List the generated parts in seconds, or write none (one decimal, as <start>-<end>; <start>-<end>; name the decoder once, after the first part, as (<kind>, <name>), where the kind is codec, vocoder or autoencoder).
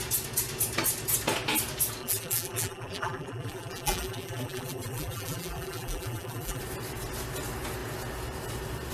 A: 2.0-6.6 (vocoder, BigVGAN v2)